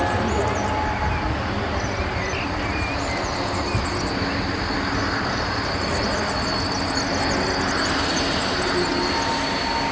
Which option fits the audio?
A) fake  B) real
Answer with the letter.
B